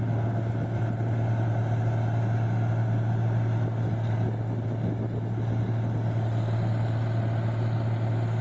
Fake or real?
real